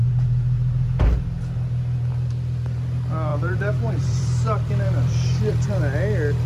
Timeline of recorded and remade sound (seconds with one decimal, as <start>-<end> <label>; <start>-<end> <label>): 0.0-3.3 recorded; 3.3-5.8 remade; 5.8-6.5 recorded